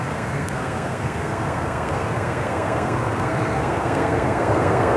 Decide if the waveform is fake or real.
fake